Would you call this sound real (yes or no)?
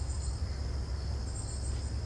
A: yes